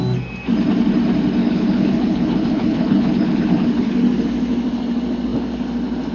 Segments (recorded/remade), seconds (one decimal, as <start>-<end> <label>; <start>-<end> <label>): 0.0-1.4 recorded; 1.4-3.9 remade; 3.9-6.1 recorded